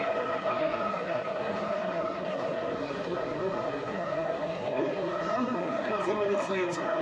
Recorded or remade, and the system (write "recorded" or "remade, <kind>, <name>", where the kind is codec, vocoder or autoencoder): remade, codec, SNAC